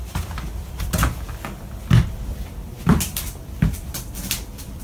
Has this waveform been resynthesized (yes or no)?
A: no